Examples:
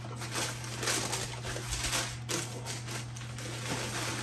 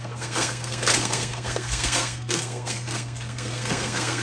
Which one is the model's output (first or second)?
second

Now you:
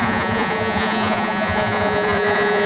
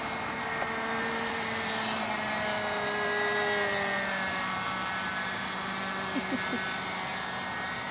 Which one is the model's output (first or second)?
first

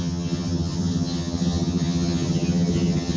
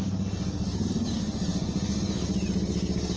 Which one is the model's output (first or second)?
first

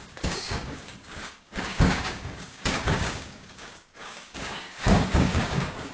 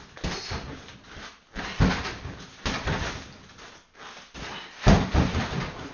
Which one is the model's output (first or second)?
first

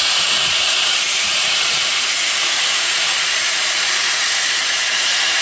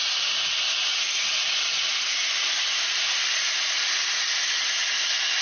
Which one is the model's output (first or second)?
first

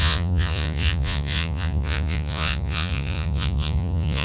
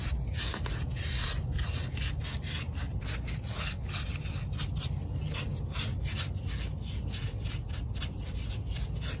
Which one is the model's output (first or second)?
first